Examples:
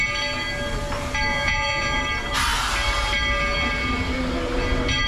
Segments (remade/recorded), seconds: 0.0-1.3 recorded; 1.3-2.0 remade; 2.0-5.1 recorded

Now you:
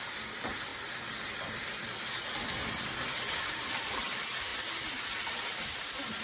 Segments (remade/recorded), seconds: 0.0-6.2 recorded

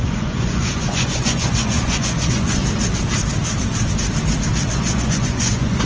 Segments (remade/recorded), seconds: 0.0-2.6 remade; 2.6-4.7 recorded; 4.7-5.9 remade

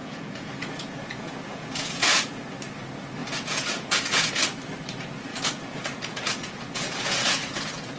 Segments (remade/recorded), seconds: 0.0-2.4 remade; 2.4-3.2 recorded; 3.2-4.3 remade; 4.3-5.3 recorded; 5.3-8.0 remade